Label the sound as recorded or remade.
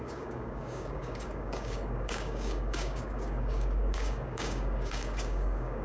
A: remade